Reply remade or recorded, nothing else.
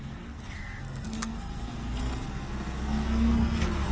remade